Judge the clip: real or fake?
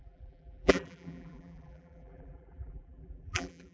fake